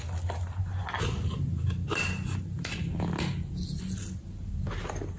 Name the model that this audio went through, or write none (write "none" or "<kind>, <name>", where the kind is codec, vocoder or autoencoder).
none